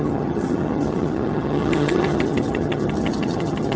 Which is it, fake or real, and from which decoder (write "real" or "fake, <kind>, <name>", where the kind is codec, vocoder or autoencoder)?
fake, vocoder, HiFi-GAN